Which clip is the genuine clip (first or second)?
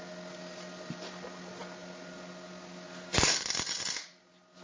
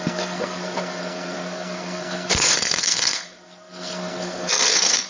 first